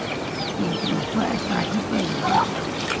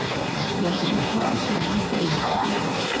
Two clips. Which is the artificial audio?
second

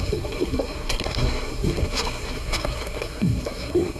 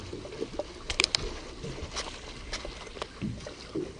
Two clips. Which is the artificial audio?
first